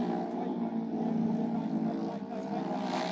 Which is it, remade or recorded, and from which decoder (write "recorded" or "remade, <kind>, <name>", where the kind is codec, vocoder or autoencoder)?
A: recorded